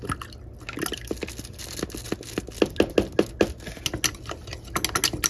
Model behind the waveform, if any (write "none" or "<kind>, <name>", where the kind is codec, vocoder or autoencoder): none